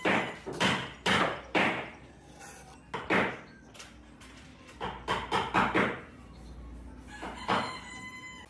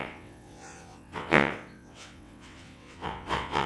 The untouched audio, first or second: first